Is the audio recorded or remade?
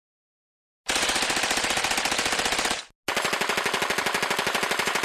recorded